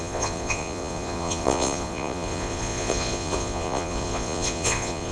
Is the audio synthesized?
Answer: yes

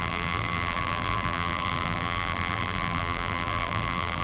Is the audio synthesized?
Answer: yes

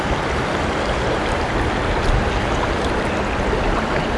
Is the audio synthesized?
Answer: no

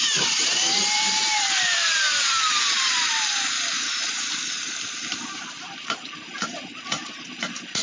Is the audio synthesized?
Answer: yes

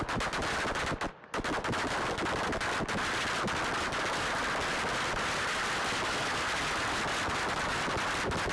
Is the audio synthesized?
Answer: no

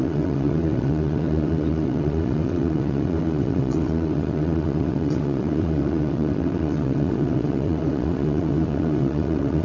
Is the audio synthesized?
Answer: yes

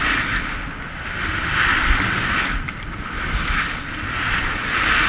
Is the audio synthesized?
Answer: no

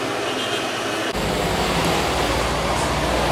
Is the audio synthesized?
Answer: no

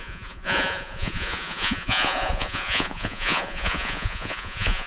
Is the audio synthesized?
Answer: yes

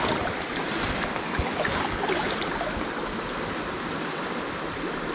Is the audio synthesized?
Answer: no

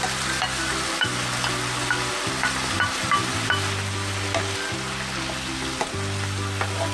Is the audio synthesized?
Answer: no